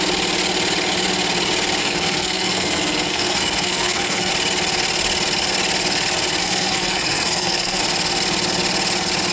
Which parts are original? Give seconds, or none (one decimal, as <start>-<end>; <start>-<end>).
0.0-1.8; 4.3-6.4; 7.8-9.3